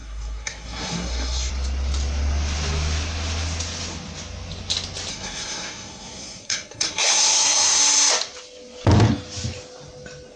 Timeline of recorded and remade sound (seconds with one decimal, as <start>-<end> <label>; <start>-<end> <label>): 0.0-1.5 remade; 1.5-5.1 recorded; 5.1-7.8 remade; 7.8-10.4 recorded